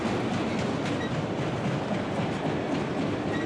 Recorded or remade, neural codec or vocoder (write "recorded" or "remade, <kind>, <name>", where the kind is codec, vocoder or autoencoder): recorded